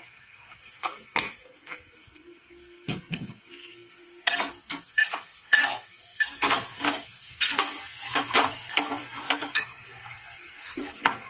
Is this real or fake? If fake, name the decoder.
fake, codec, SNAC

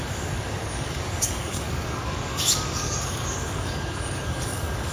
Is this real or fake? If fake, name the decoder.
fake, codec, DAC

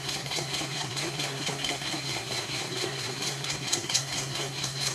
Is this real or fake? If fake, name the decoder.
fake, codec, SNAC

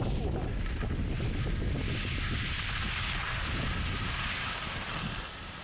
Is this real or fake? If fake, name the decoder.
real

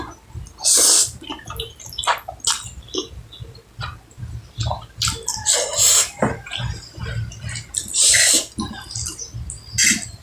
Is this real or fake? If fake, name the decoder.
real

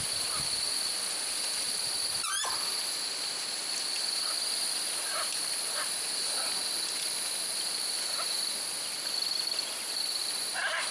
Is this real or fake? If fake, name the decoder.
real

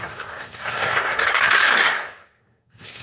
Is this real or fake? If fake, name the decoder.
fake, codec, SNAC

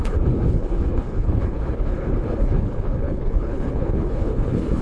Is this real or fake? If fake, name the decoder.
fake, codec, HILCodec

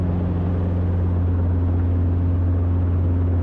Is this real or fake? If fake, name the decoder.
real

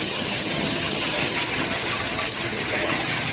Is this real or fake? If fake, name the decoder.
fake, vocoder, HiFi-GAN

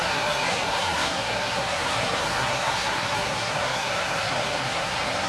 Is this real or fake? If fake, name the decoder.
fake, codec, SNAC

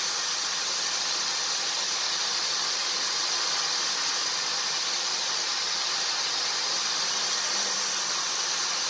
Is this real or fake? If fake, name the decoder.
real